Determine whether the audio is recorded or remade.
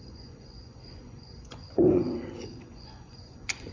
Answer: remade